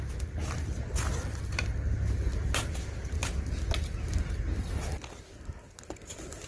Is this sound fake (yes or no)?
no